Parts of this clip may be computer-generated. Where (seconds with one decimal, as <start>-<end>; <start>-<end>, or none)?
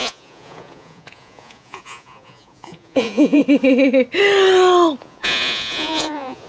0.0-3.4; 5.0-6.5